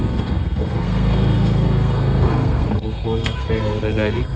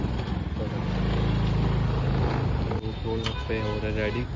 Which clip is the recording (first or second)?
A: second